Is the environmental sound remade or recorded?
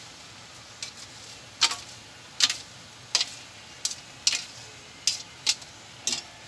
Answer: recorded